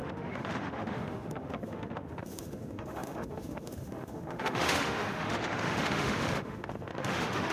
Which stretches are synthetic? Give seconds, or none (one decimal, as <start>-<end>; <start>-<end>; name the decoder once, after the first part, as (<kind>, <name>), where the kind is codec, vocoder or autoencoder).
0.0-7.5 (autoencoder, DAC-VAE)